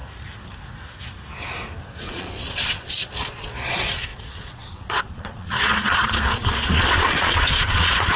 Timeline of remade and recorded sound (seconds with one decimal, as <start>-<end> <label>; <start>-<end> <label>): 0.0-2.1 recorded; 2.1-8.2 remade